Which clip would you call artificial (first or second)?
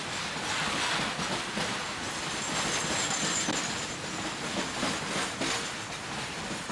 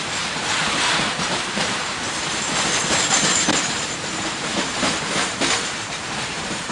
second